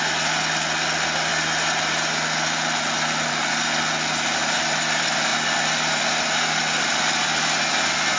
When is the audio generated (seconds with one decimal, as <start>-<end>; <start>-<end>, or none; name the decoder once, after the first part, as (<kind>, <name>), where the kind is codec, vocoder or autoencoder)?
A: none